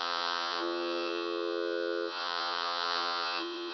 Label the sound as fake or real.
fake